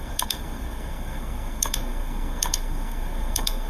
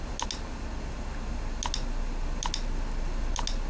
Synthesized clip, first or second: first